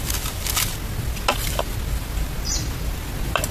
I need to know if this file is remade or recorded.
recorded